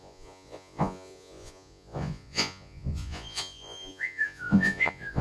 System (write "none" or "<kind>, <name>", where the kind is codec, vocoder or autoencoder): vocoder, Vocos